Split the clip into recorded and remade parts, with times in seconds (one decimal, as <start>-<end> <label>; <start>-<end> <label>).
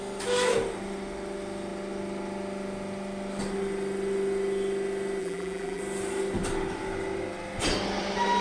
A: 0.0-5.2 recorded; 5.2-5.8 remade; 5.8-8.4 recorded